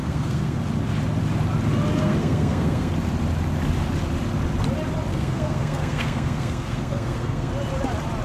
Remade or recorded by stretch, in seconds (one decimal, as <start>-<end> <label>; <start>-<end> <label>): 0.0-0.6 remade; 0.6-2.0 recorded; 2.0-2.9 remade; 2.9-5.1 recorded; 5.1-7.5 remade; 7.5-8.2 recorded